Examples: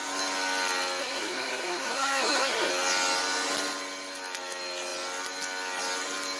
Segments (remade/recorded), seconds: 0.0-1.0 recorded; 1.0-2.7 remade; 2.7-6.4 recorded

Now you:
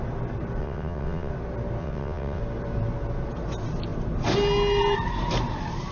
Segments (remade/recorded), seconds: 0.0-0.6 recorded; 0.6-1.3 remade; 1.3-1.8 recorded; 1.8-2.4 remade; 2.4-5.9 recorded

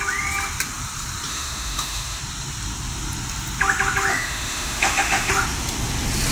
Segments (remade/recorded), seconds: 0.0-1.3 recorded; 1.3-2.2 remade; 2.2-4.1 recorded; 4.1-5.3 remade; 5.3-6.3 recorded

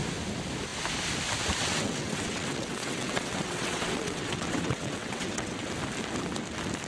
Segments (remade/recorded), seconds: 0.0-1.6 recorded; 1.6-5.7 remade; 5.7-6.9 recorded

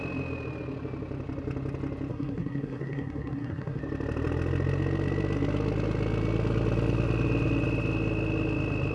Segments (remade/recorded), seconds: 0.0-2.1 recorded; 2.1-3.8 remade; 3.8-8.9 recorded

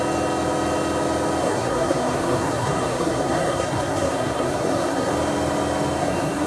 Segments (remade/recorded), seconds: 0.0-1.4 recorded; 1.4-5.1 remade; 5.1-6.0 recorded; 6.0-6.5 remade